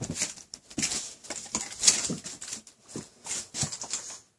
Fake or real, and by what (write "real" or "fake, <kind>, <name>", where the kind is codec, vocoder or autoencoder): real